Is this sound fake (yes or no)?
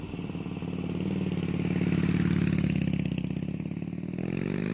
no